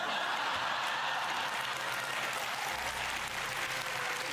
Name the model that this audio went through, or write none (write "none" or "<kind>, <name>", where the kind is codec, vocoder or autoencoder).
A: none